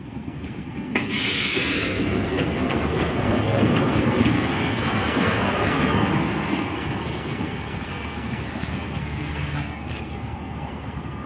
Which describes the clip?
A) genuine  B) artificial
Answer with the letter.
B